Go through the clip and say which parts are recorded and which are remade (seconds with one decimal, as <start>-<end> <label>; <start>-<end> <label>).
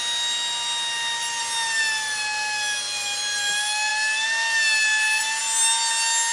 0.0-6.3 recorded